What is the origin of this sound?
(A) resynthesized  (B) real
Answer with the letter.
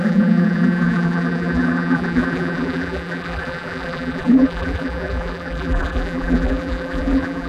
A